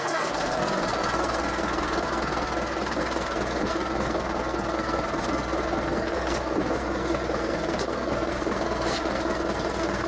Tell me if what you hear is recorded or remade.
remade